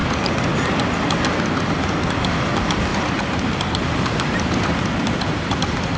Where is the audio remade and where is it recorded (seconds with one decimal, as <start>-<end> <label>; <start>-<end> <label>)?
0.0-2.9 recorded; 2.9-5.6 remade; 5.6-6.0 recorded